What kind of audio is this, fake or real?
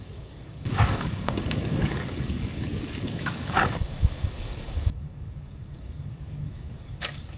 fake